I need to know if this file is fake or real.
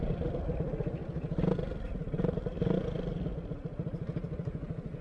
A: real